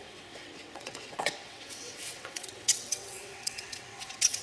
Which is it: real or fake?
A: fake